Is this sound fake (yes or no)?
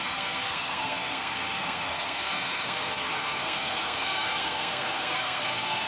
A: yes